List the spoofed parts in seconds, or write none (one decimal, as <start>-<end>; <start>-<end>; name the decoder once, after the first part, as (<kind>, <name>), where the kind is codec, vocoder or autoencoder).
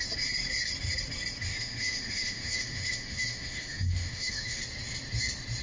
1.5-4.6 (autoencoder, DAC-VAE)